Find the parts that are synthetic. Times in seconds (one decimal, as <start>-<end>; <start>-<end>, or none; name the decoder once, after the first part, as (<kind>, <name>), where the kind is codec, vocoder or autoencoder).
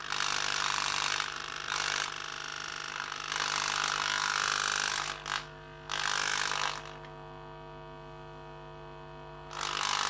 0.5-2.1 (vocoder, BigVGAN v2)